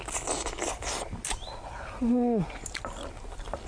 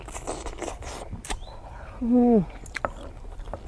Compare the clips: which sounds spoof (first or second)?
second